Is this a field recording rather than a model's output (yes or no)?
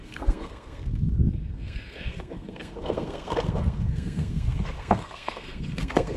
no